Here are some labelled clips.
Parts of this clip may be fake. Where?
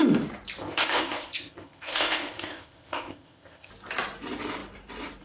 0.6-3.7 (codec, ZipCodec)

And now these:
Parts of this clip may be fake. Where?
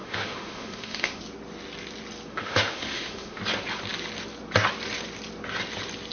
0.0-1.2 (autoencoder, DAC-VAE); 2.3-3.4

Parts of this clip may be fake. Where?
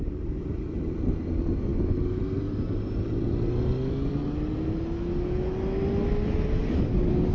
1.7-2.2 (autoencoder, DAC-VAE)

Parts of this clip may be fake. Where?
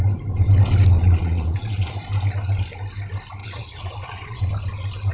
1.0-1.9 (vocoder, Vocos); 3.4-4.4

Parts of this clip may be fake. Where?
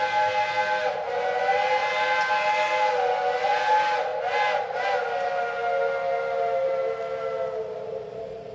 none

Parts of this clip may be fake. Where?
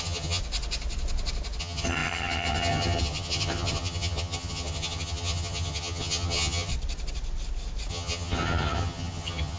0.0-0.4 (vocoder, HiFi-GAN); 1.6-6.7; 7.9-9.6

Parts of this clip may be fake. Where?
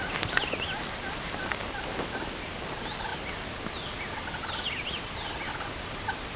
none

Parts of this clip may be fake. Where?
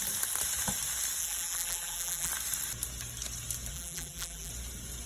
1.2-2.3 (vocoder, BigVGAN v2); 3.7-4.5